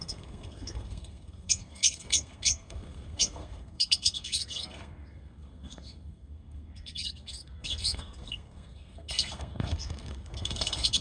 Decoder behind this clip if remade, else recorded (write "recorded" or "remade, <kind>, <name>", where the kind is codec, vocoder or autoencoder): remade, codec, SNAC